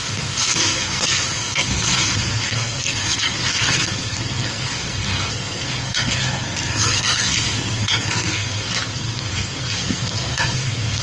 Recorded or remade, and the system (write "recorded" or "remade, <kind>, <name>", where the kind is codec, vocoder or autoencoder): remade, codec, SNAC